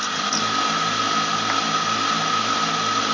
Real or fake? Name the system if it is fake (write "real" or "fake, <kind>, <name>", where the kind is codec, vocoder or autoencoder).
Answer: real